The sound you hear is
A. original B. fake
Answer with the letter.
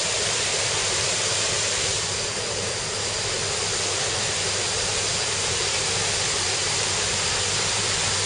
B